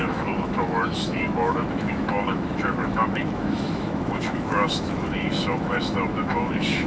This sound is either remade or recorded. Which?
remade